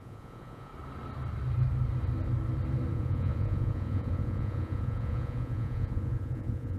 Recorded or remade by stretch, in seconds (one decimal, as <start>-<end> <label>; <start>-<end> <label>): 0.0-0.7 remade; 0.7-2.9 recorded; 2.9-6.8 remade